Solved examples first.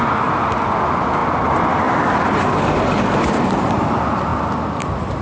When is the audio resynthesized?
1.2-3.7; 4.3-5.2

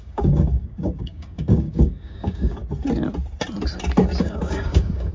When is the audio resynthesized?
0.0-2.6; 4.2-5.1

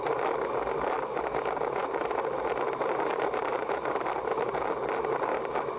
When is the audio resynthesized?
3.1-4.5